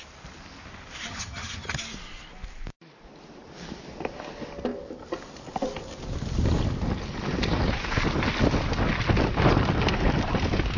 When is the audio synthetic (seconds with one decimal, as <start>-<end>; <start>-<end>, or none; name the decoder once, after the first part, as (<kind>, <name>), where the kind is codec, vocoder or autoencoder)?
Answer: 1.1-1.8 (vocoder, HiFi-GAN)